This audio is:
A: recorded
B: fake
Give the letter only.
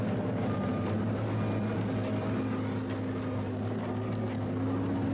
A